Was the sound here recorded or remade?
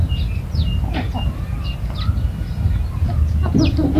recorded